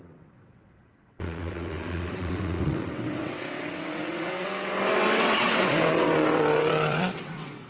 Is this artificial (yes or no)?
yes